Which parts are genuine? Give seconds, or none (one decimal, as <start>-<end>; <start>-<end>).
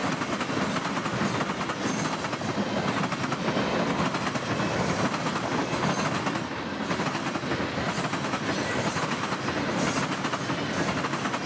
0.0-11.5